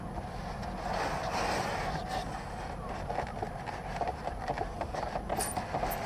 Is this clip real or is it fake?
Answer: real